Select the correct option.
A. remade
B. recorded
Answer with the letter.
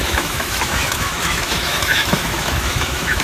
A